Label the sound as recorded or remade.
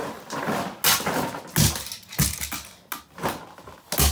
recorded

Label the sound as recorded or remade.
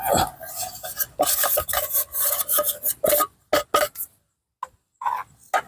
recorded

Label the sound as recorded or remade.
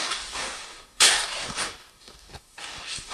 remade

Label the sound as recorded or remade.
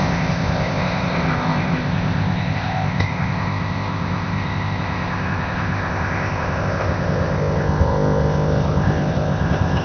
remade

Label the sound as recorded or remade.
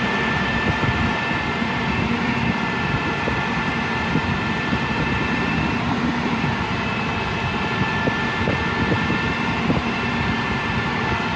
remade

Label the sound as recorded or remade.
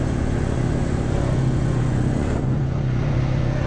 remade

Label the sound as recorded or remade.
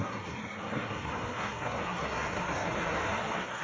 remade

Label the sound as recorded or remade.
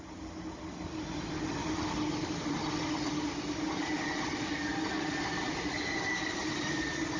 recorded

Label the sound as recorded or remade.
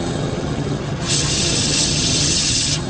remade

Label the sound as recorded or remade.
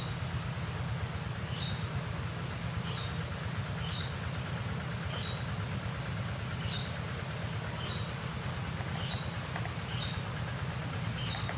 recorded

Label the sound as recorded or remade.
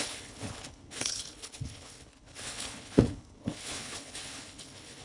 remade